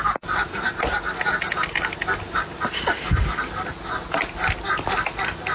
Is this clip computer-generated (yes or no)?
no